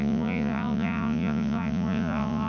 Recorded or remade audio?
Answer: remade